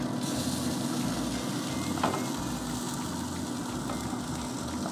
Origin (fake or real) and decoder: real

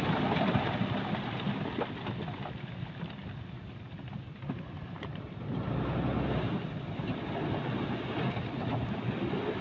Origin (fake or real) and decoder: real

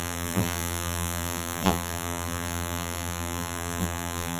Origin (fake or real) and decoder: fake, vocoder, BigVGAN v2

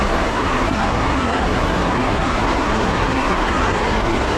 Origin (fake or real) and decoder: fake, codec, SNAC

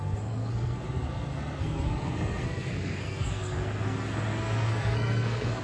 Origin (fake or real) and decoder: fake, codec, SNAC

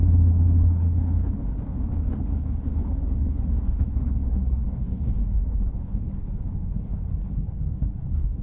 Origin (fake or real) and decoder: fake, codec, HILCodec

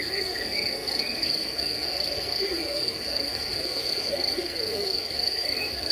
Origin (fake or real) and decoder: fake, codec, SNAC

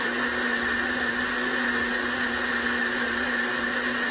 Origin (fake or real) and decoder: real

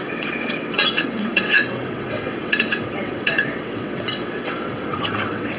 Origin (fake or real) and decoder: fake, vocoder, WaveNeXt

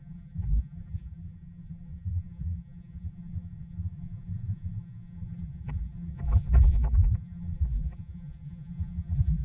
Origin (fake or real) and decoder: fake, vocoder, BigVGAN v2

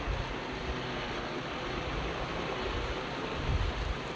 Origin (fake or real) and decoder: real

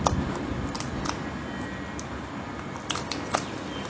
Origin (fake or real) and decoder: real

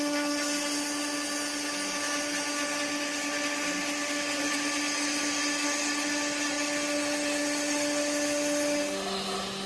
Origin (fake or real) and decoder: real